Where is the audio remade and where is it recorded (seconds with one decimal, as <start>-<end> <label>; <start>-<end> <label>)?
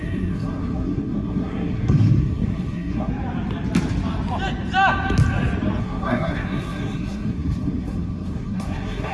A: 0.0-3.1 remade; 3.1-5.8 recorded; 5.8-9.1 remade